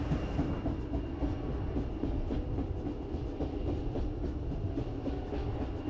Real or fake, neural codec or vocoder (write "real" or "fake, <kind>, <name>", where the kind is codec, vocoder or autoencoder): real